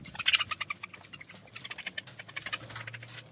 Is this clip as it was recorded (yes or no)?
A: yes